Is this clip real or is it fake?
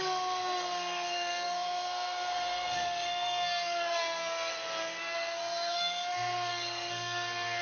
fake